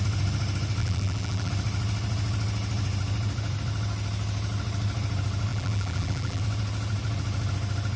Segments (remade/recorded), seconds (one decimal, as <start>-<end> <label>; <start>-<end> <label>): 0.0-0.8 recorded; 0.8-1.5 remade; 1.5-5.5 recorded; 5.5-6.4 remade; 6.4-8.0 recorded